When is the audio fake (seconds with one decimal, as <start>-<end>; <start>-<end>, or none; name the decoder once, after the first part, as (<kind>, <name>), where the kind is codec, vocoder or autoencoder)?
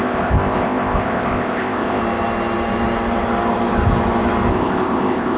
0.0-2.0 (codec, ZipCodec); 4.5-5.4